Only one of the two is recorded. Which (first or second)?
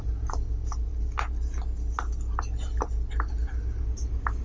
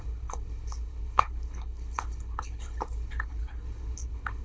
first